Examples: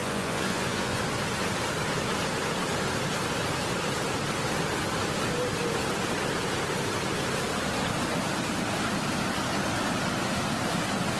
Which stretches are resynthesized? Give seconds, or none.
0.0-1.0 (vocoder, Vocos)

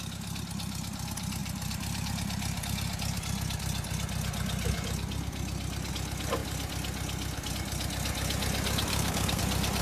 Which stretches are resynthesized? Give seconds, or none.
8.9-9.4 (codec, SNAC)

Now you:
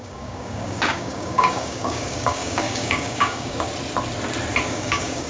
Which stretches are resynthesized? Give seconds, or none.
0.0-3.7 (codec, DAC); 4.6-5.3

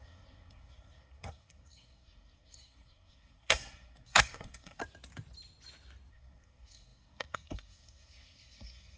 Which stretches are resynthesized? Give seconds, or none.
0.0-4.8 (codec, SNAC); 6.1-9.0